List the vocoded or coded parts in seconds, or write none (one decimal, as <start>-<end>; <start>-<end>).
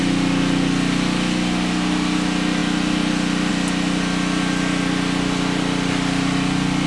none